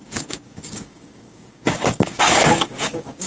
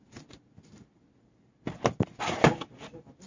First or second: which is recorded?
second